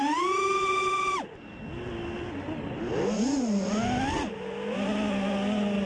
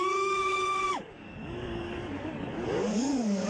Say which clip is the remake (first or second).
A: second